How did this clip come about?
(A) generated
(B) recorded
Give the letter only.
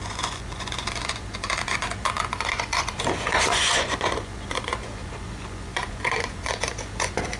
A